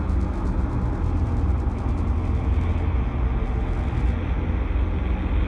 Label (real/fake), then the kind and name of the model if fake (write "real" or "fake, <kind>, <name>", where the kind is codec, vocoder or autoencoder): real